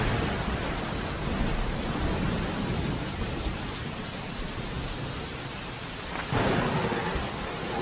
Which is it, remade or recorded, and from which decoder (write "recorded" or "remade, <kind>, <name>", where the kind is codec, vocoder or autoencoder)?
recorded